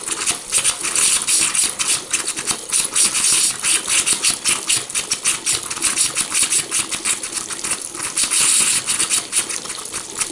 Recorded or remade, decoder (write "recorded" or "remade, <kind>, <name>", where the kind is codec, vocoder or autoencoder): recorded